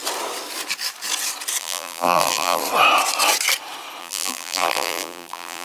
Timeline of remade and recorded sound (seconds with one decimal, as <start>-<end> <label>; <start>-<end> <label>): 0.0-1.6 recorded; 1.6-2.6 remade; 2.6-4.0 recorded; 4.0-5.6 remade